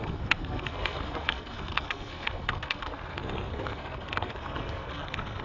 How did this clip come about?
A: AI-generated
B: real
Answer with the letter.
A